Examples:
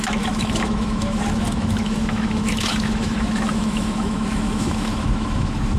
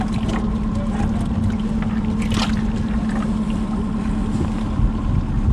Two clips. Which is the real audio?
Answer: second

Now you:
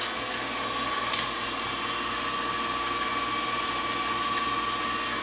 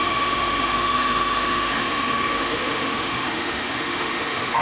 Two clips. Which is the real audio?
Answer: first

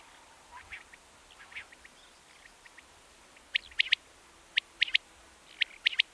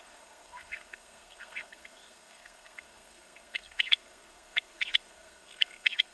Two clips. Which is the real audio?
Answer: first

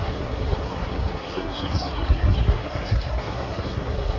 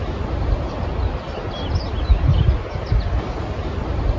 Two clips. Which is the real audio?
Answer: second